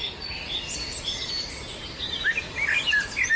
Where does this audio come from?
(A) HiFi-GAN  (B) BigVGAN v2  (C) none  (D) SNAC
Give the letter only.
C